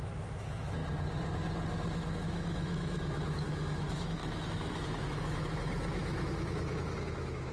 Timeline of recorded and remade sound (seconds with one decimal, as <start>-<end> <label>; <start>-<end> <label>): 0.0-0.8 remade; 0.8-2.2 recorded; 2.2-7.5 remade